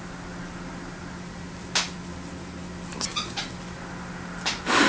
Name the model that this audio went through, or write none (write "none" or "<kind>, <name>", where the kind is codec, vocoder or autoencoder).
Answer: none